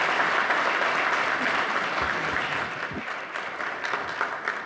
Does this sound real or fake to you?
real